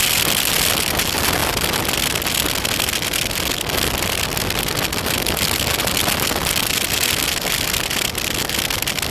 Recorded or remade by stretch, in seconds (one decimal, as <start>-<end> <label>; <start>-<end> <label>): 0.0-9.1 recorded